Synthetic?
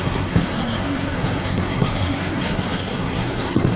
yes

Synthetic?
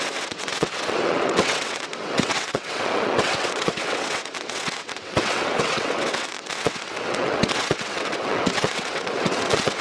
yes